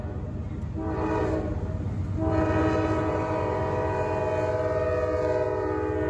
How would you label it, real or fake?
real